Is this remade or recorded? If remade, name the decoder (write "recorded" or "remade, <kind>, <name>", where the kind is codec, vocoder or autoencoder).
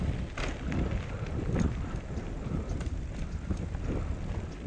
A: recorded